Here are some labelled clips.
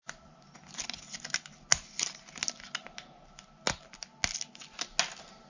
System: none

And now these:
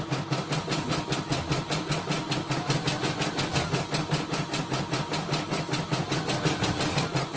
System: none